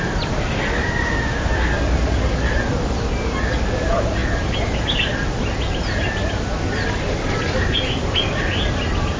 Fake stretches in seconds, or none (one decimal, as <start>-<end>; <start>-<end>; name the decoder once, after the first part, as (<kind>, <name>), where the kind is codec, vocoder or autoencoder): 1.0-1.5 (autoencoder, DAC-VAE)